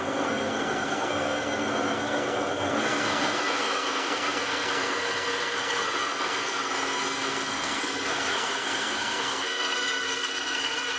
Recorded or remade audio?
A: remade